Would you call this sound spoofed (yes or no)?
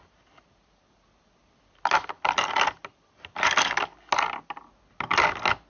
no